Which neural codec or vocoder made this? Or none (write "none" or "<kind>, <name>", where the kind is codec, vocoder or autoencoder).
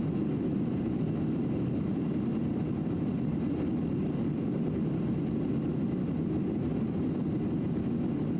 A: none